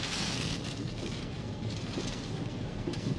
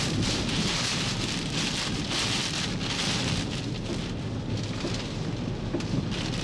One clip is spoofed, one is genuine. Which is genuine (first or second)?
second